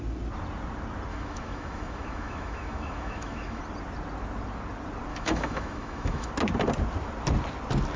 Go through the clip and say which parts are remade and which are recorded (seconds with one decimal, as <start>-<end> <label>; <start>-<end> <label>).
0.0-1.1 recorded; 1.1-3.6 remade; 3.6-5.1 recorded; 5.1-6.3 remade; 6.3-8.0 recorded